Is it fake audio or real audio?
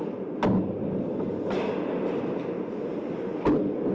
real